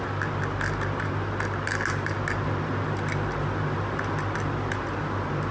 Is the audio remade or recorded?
recorded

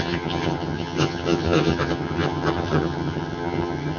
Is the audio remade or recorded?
remade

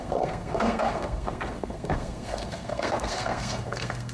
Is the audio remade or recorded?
remade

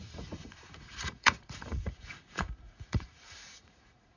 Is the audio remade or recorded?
remade